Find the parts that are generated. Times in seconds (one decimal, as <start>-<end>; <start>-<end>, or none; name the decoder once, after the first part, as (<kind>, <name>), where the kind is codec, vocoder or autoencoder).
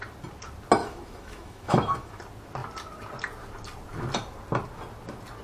0.8-2.2 (autoencoder, DAC-VAE)